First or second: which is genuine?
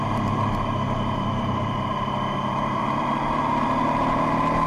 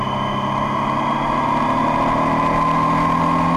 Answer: second